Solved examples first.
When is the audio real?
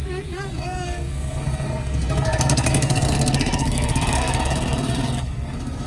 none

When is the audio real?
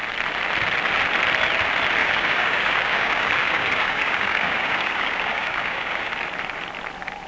0.0-2.0; 6.1-7.3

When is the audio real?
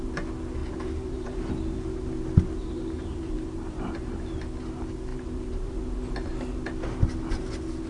0.0-0.6; 1.5-2.6; 4.3-5.1; 5.7-7.9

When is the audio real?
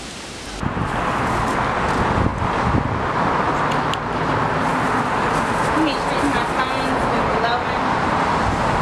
0.0-8.8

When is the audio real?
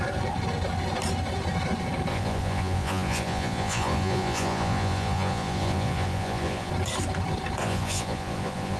0.0-2.1; 6.7-7.6